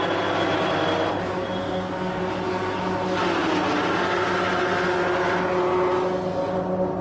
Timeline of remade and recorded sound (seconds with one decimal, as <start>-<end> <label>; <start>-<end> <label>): 0.0-1.6 recorded; 1.6-2.2 remade; 2.2-7.0 recorded